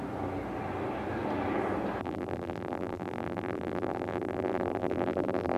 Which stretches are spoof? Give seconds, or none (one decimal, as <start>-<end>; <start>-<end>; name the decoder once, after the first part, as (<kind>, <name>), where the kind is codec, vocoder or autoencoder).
2.0-5.6 (vocoder, BigVGAN v2)